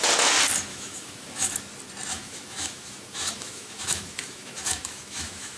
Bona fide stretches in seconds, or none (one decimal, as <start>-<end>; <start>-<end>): 0.0-0.7; 1.5-2.1